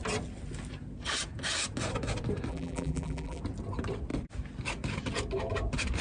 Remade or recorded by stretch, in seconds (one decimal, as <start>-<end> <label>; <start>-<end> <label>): 0.0-2.5 recorded; 2.5-3.4 remade; 3.4-6.0 recorded